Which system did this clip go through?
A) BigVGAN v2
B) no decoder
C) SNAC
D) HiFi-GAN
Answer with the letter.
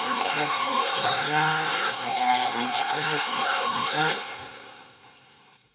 C